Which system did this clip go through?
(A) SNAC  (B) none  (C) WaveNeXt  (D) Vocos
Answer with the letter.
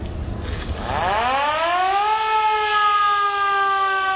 B